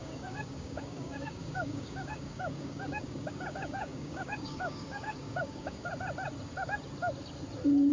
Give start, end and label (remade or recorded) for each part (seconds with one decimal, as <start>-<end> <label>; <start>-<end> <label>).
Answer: 0.0-5.9 remade; 5.9-7.9 recorded